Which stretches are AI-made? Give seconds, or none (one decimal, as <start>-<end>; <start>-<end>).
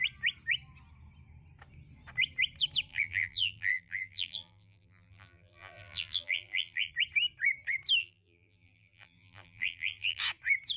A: 2.9-6.9; 8.0-10.2